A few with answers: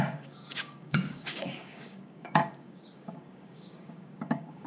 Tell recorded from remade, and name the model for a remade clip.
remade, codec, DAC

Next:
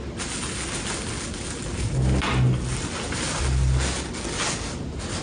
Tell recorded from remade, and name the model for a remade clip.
recorded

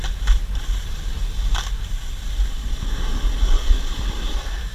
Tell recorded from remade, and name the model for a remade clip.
recorded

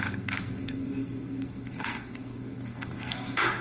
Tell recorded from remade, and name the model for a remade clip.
remade, codec, SNAC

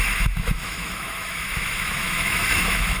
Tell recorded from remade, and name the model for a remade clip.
remade, autoencoder, DAC-VAE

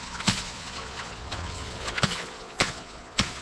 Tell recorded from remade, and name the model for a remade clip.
remade, vocoder, Vocos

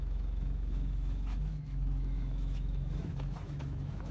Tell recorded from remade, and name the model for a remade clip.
remade, autoencoder, DAC-VAE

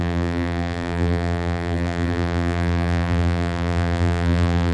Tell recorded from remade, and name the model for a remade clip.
remade, vocoder, BigVGAN v2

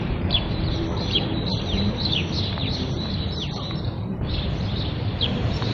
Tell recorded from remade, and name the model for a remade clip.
remade, vocoder, BigVGAN v2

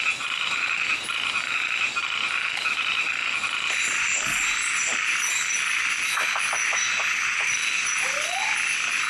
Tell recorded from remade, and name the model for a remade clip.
recorded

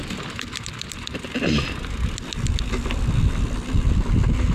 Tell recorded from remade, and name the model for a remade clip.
recorded